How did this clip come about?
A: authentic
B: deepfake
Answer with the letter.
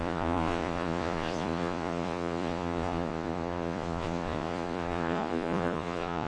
B